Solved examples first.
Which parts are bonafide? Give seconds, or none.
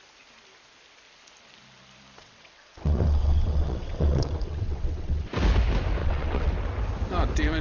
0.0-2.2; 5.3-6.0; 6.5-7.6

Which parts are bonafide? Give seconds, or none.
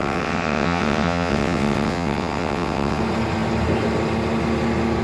3.0-5.0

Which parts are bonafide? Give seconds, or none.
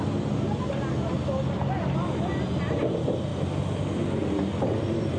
0.0-5.2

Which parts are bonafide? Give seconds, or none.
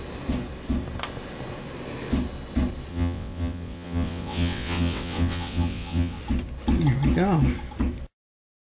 0.0-2.9; 6.2-8.7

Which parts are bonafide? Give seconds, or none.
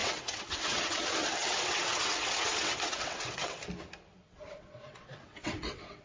3.6-4.1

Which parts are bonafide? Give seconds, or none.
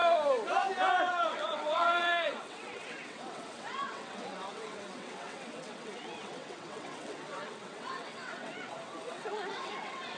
0.0-1.0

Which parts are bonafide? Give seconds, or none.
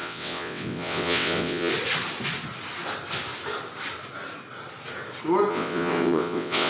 1.7-5.5